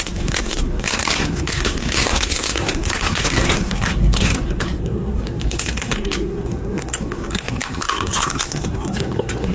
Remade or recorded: remade